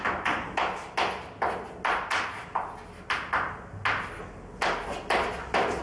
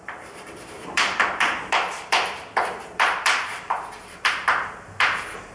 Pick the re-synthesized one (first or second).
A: second